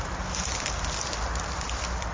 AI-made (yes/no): no